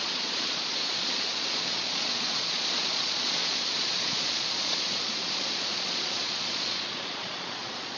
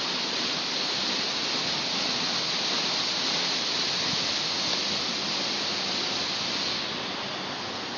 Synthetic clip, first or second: first